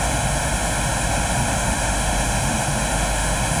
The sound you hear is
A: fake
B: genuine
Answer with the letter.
A